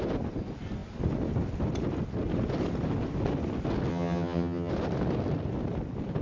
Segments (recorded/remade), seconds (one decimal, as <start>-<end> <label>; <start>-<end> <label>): 0.0-3.9 recorded; 3.9-4.7 remade; 4.7-6.2 recorded